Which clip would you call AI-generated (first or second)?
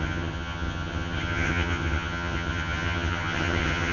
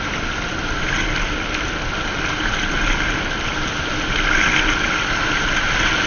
first